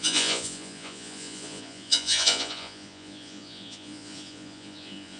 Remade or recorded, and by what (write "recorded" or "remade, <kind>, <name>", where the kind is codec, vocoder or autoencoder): remade, vocoder, Vocos